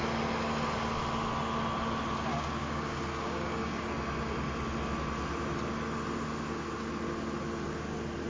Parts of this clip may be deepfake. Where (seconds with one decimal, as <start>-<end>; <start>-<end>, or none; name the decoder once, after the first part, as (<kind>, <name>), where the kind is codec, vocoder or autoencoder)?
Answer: 2.3-3.9 (codec, DAC)